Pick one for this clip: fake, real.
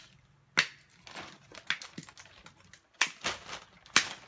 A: real